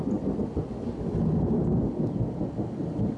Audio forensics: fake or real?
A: real